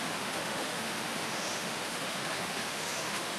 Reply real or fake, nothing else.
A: fake